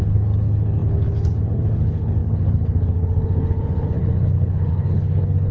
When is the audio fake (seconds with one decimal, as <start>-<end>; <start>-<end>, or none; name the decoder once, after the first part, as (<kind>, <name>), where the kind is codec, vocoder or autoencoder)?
0.0-5.5 (codec, HILCodec)